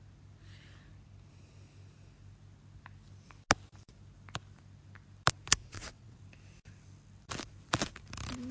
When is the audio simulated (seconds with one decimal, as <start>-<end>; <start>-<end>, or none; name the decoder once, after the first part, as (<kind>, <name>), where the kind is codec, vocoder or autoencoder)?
5.6-6.2 (vocoder, WaveNeXt)